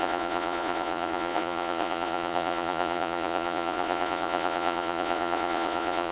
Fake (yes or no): yes